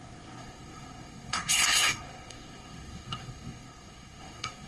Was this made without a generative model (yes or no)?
no